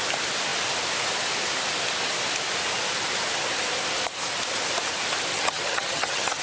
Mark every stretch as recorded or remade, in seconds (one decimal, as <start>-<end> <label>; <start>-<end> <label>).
0.0-5.3 recorded; 5.3-6.4 remade